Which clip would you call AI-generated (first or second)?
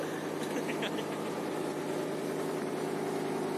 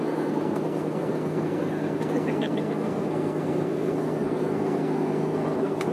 second